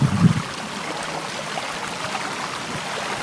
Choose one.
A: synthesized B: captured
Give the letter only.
B